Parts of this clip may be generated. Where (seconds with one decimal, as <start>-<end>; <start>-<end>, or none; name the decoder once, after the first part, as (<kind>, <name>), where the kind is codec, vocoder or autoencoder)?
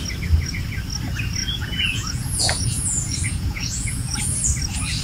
1.4-4.2 (vocoder, Vocos)